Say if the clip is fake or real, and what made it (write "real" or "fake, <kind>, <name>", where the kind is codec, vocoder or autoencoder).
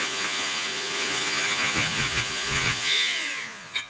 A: fake, vocoder, Vocos